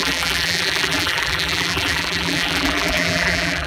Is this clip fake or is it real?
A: fake